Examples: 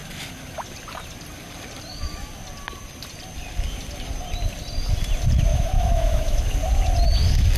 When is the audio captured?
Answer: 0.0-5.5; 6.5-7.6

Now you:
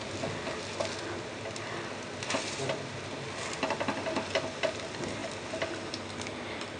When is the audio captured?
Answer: 0.0-6.8

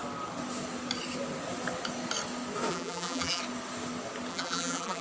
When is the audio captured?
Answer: 0.0-2.7; 3.4-4.3

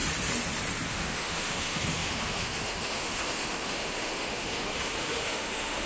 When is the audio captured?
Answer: 0.0-0.9